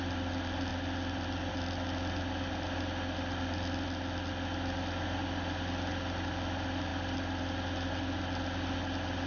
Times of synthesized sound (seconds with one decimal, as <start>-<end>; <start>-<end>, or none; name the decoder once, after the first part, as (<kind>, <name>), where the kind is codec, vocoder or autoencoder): none